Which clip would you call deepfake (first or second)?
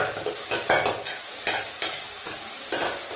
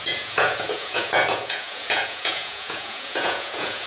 second